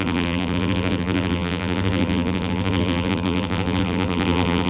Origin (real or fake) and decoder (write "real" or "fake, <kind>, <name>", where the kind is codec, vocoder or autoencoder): fake, vocoder, BigVGAN v2